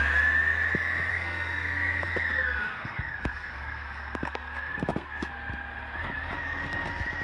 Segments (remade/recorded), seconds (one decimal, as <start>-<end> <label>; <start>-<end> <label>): 0.0-1.1 recorded; 1.1-5.3 remade; 5.3-7.2 recorded